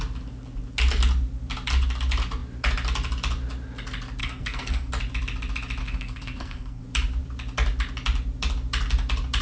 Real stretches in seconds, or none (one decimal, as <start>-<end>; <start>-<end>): 0.0-4.2; 4.9-5.8; 6.8-9.4